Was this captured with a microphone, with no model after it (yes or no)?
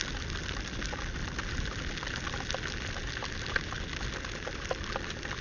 yes